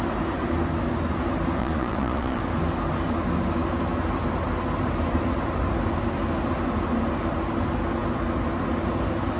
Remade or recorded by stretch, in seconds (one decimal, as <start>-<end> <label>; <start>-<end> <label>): 0.0-1.6 recorded; 1.6-2.4 remade; 2.4-9.4 recorded